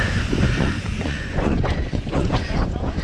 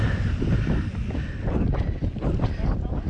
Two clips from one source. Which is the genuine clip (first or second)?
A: second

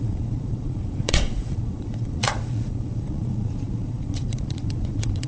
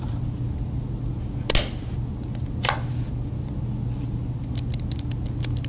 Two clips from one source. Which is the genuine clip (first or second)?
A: second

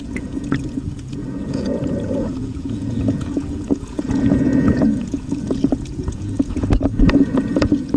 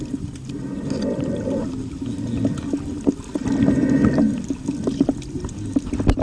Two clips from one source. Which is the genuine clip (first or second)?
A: second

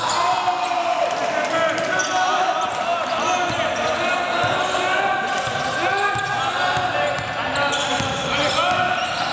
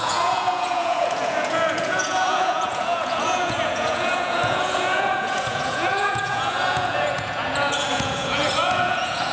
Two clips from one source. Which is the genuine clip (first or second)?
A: first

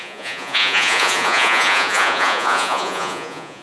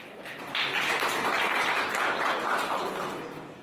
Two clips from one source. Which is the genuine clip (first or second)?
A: second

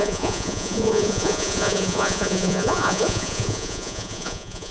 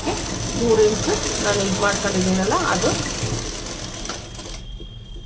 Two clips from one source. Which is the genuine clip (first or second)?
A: second